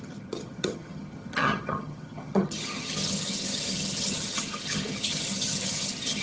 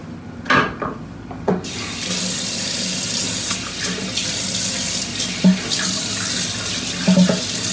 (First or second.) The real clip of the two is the second